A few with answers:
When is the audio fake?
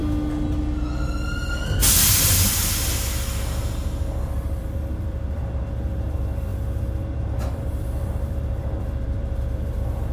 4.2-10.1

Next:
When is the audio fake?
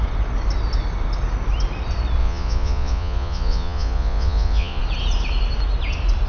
2.2-4.8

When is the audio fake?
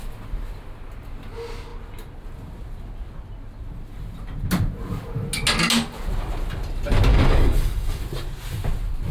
7.1-8.0